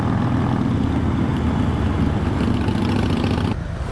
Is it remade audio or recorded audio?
recorded